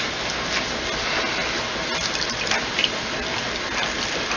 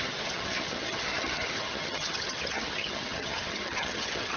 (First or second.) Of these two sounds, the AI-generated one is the second